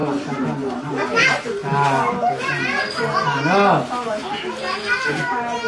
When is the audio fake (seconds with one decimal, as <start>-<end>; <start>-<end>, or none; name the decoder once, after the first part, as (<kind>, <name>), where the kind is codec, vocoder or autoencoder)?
none